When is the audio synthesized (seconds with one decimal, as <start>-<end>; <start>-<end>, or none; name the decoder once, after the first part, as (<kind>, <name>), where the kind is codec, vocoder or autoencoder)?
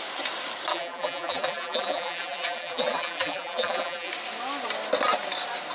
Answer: 0.7-4.1 (vocoder, BigVGAN v2)